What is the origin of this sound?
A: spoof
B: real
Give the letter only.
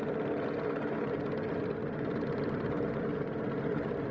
B